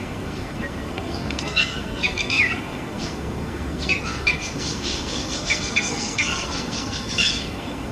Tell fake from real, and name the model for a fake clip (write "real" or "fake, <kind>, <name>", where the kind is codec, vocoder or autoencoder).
fake, codec, SNAC